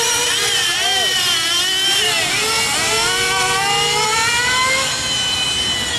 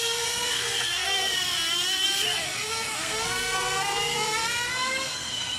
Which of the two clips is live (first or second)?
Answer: first